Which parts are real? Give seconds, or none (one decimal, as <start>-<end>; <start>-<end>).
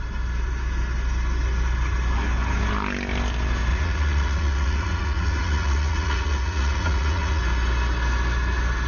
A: 0.0-3.7; 7.4-8.9